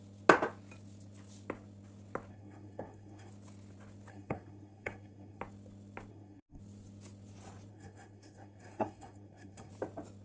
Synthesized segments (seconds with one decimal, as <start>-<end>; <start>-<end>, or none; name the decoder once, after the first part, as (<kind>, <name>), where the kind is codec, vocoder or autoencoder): 2.3-3.3 (codec, SNAC); 4.1-5.4; 6.1-6.6; 7.7-9.7